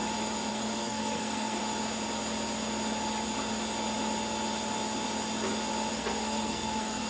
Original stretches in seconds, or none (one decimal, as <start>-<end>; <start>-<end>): 0.0-0.5; 1.6-5.9